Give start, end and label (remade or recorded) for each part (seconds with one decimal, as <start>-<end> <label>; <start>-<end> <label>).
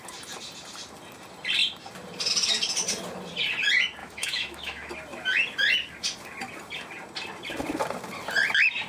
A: 0.0-4.0 recorded; 4.0-4.9 remade; 4.9-8.9 recorded